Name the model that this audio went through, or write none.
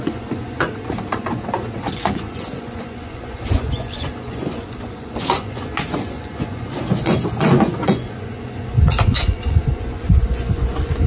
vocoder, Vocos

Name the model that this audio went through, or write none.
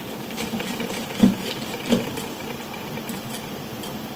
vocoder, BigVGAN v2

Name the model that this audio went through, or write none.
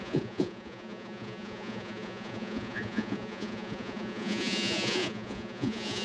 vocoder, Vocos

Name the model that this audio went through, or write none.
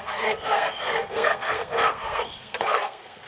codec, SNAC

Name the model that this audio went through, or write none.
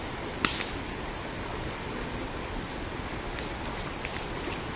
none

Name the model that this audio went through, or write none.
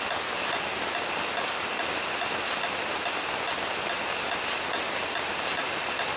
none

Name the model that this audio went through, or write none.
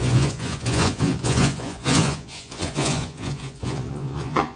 vocoder, Vocos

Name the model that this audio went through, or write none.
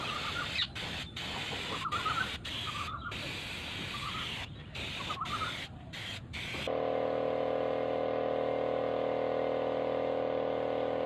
none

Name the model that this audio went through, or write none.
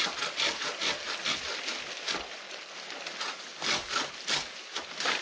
none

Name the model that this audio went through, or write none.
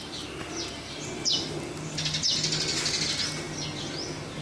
none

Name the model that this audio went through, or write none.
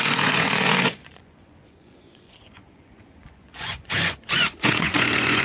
vocoder, Vocos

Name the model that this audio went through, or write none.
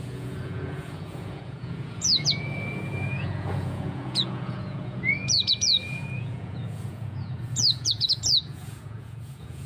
vocoder, Vocos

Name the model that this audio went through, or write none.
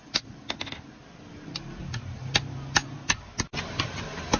none